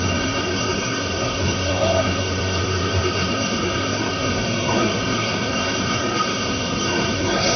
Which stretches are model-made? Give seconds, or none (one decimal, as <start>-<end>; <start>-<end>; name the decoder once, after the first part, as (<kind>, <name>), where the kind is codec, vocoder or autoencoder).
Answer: 0.0-7.6 (codec, SNAC)